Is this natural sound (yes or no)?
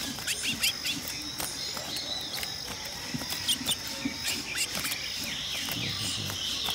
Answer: yes